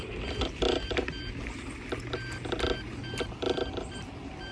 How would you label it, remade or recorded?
recorded